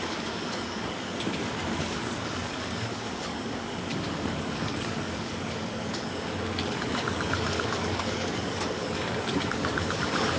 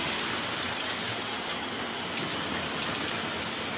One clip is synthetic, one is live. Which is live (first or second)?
second